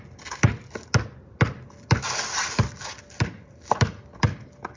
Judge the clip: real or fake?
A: real